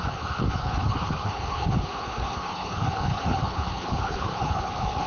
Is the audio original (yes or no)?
no